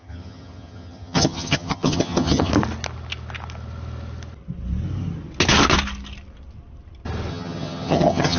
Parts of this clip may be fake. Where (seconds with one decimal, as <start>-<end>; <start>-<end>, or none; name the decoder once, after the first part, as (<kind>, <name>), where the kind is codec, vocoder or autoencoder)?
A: 0.0-2.5 (vocoder, HiFi-GAN); 7.3-8.4